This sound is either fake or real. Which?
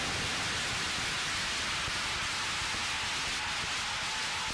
real